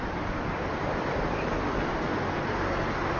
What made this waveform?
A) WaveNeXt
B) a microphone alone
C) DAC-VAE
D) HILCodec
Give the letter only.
B